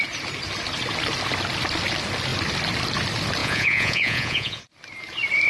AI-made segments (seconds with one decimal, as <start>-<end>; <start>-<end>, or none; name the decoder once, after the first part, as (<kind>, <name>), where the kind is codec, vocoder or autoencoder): 3.4-4.6 (vocoder, Vocos)